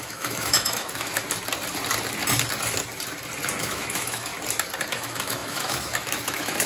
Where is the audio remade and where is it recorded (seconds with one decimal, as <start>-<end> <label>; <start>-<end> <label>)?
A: 0.0-1.2 remade; 1.2-3.6 recorded; 3.6-4.3 remade; 4.3-4.9 recorded; 4.9-6.7 remade